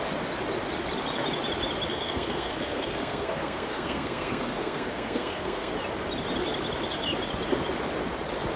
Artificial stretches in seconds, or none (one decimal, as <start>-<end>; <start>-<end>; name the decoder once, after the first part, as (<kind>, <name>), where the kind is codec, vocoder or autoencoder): 1.9-5.7 (codec, SNAC)